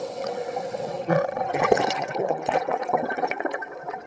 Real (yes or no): no